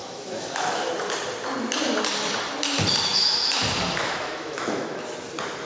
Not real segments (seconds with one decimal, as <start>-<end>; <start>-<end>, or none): 0.0-0.9; 3.1-3.6; 4.0-5.0